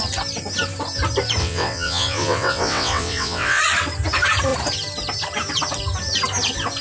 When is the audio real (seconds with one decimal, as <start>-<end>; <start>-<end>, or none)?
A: 0.0-1.4; 3.6-6.8

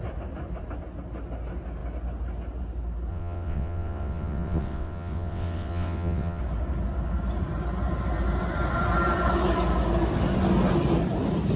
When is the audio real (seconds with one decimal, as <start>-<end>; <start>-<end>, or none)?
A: 0.0-3.1; 6.4-11.6

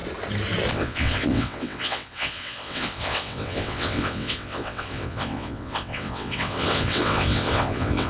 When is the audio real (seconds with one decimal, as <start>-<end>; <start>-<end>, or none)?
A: 0.0-0.7

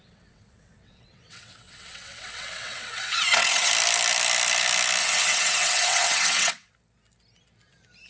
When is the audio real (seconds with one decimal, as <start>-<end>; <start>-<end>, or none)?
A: 3.7-5.0; 6.7-8.1